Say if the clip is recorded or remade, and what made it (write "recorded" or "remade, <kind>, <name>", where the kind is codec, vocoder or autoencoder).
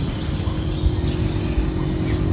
recorded